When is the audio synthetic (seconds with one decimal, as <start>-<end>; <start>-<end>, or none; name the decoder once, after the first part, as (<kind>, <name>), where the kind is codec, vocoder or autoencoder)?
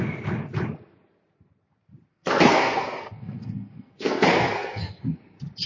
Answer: 2.1-5.2 (codec, SNAC)